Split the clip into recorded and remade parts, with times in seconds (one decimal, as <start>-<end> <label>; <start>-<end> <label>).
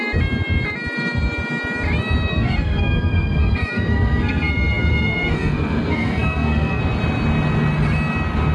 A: 0.0-2.3 recorded; 2.3-6.8 remade; 6.8-8.5 recorded